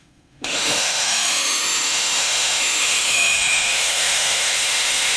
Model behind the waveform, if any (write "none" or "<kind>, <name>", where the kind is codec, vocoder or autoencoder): autoencoder, DAC-VAE